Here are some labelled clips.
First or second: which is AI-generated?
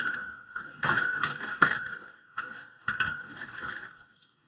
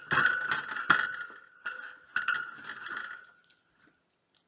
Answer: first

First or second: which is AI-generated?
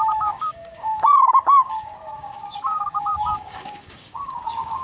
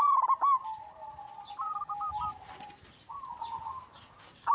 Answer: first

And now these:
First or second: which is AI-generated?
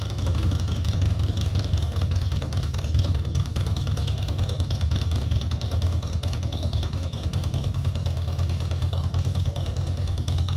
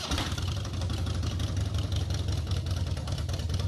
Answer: first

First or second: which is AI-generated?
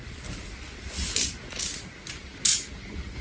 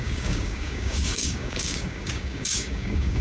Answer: second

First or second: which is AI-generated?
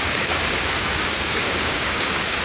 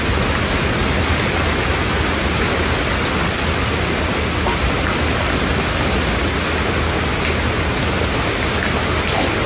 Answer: first